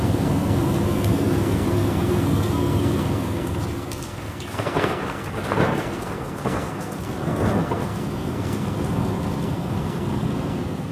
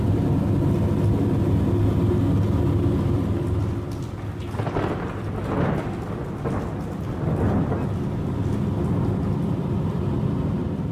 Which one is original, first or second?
second